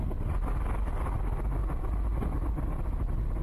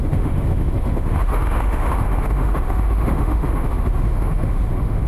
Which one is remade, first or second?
second